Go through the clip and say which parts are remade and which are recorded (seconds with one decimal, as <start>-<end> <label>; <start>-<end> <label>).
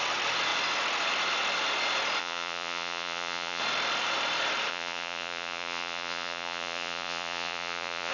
0.0-2.2 recorded; 2.2-3.6 remade; 3.6-4.7 recorded; 4.7-8.1 remade